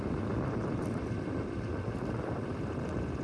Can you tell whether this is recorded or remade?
recorded